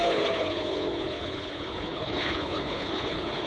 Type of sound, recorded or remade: remade